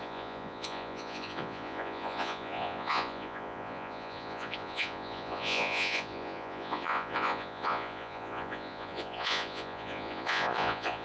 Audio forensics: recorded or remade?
remade